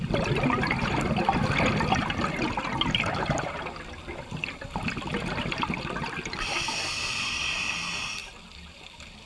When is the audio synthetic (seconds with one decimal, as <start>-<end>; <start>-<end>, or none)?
none